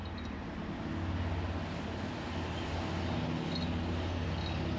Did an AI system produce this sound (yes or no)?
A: no